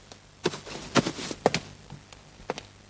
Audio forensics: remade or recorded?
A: recorded